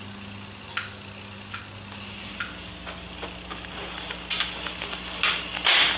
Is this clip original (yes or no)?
yes